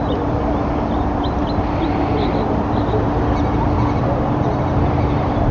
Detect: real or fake real